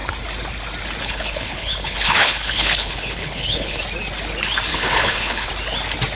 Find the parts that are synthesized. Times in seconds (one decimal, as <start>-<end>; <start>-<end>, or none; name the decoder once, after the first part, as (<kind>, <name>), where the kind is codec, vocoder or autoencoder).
1.0-3.8 (codec, HILCodec); 4.7-5.5